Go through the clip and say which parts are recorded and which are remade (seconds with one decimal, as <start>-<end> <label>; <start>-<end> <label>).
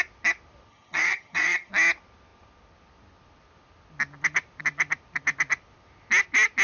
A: 0.0-0.7 recorded; 0.7-1.7 remade; 1.7-6.6 recorded